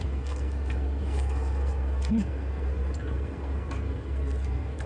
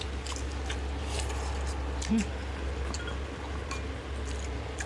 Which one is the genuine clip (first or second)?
second